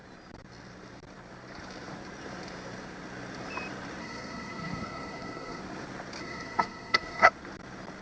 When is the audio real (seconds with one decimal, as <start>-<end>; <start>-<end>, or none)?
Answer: 0.0-4.0; 5.6-6.2; 7.3-8.0